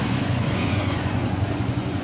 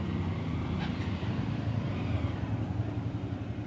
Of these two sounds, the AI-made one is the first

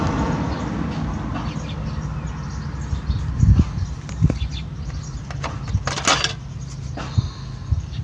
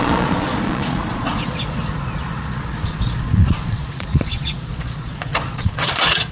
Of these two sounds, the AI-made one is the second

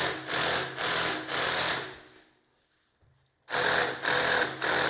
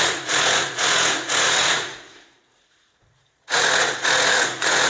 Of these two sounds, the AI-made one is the second